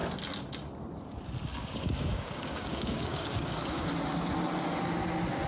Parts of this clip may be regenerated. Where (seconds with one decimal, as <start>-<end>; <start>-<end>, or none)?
1.5-3.9